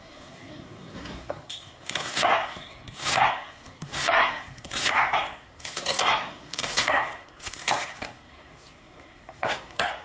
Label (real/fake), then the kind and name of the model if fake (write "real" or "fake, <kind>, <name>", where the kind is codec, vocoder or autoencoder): fake, codec, SNAC